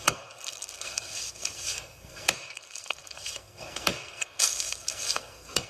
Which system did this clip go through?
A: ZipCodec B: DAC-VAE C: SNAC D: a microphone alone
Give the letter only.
C